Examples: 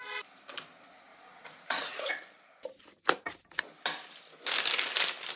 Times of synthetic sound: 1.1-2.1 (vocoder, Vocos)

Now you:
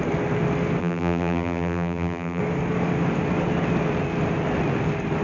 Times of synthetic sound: 0.8-2.4 (vocoder, BigVGAN v2)

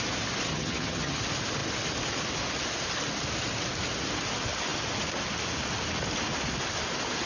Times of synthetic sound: 0.5-1.2 (vocoder, HiFi-GAN)

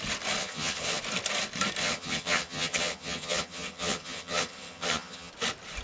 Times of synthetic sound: 0.4-1.0 (vocoder, HiFi-GAN); 1.8-5.3

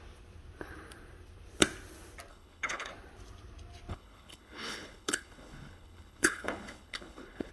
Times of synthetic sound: 2.3-2.9 (codec, HILCodec); 3.9-7.5

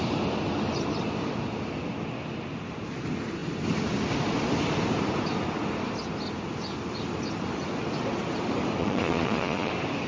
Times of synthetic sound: 8.8-9.7 (vocoder, Vocos)